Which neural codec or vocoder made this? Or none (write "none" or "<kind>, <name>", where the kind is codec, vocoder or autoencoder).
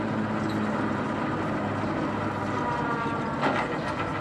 none